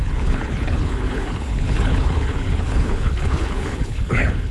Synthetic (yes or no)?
yes